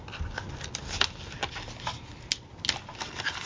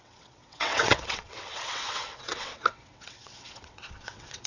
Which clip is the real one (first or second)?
first